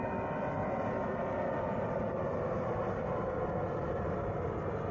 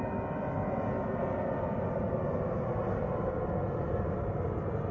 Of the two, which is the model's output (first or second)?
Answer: first